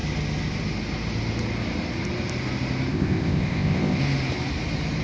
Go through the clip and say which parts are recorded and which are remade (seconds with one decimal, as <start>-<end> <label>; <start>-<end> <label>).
0.0-2.9 recorded; 2.9-4.0 remade; 4.0-5.0 recorded